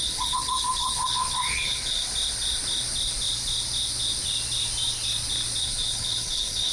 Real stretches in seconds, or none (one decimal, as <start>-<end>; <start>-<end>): 2.0-5.6